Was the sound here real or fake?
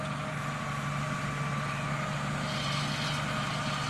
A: real